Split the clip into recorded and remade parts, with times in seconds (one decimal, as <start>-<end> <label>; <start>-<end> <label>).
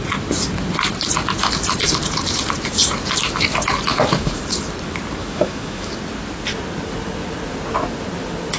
0.0-3.9 recorded; 3.9-4.4 remade; 4.4-5.2 recorded; 5.2-5.9 remade; 5.9-8.6 recorded